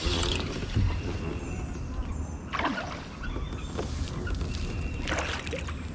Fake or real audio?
real